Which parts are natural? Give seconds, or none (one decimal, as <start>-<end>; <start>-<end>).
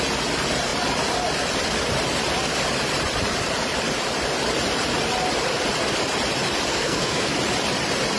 0.0-6.7; 7.3-8.2